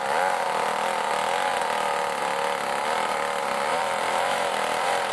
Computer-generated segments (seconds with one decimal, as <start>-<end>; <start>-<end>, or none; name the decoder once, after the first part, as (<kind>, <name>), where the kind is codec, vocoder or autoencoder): 3.7-5.1 (vocoder, BigVGAN v2)